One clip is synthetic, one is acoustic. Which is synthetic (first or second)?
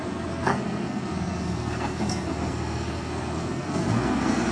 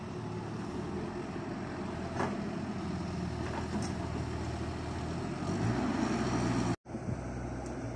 first